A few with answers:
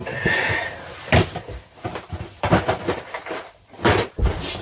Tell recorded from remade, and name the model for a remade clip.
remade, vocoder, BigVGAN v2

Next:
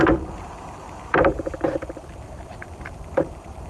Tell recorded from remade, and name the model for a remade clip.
remade, vocoder, BigVGAN v2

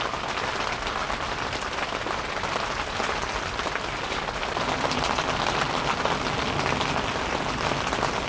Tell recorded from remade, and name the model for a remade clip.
recorded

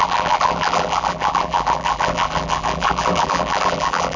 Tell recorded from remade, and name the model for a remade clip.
remade, vocoder, BigVGAN v2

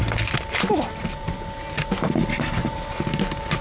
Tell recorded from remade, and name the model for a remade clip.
recorded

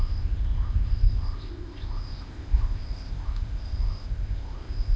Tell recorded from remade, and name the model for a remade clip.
remade, codec, ZipCodec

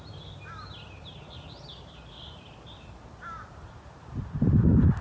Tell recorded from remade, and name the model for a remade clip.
remade, vocoder, BigVGAN v2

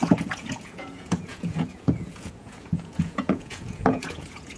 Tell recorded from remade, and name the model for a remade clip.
remade, vocoder, Vocos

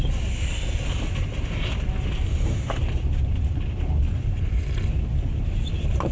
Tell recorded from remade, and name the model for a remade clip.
recorded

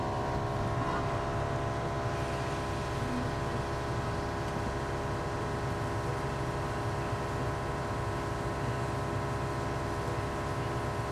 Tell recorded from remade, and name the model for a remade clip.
recorded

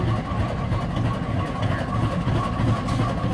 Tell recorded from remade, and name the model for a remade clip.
recorded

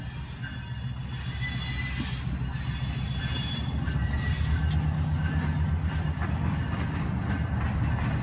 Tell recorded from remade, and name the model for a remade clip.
recorded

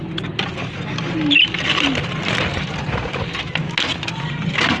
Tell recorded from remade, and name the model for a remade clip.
recorded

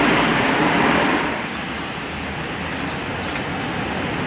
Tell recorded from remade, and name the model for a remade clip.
recorded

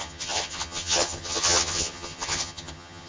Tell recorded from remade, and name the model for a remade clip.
remade, vocoder, HiFi-GAN